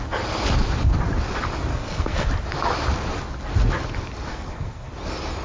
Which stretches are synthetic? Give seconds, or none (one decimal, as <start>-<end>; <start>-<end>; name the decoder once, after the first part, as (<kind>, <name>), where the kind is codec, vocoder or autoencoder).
1.7-2.3 (codec, SNAC); 4.3-4.9